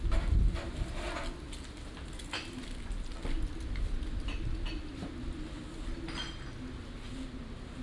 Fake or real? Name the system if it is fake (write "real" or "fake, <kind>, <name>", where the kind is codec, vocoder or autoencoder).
real